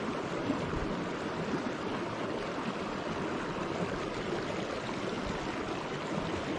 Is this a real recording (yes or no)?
yes